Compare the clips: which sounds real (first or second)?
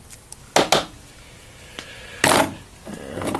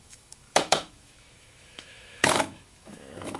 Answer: first